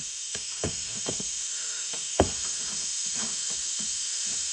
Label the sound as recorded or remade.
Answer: remade